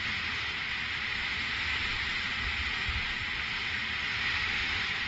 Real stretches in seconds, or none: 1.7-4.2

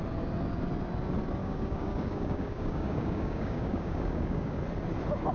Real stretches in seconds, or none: 0.0-1.4; 4.6-5.3

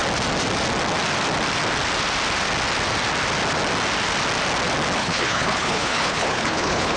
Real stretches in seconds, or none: 0.0-5.0

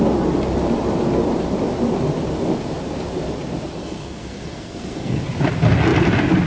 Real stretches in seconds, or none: 0.0-3.8; 5.2-6.5

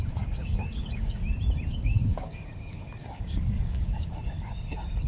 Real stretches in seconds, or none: 1.2-1.7

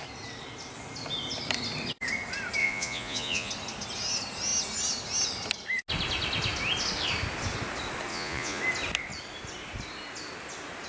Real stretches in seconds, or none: 0.0-2.6; 3.5-8.1; 8.6-10.9